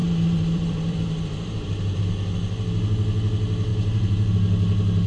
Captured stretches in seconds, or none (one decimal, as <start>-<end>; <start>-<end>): 2.0-3.7; 4.3-5.1